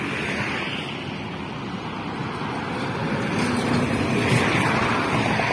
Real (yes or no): yes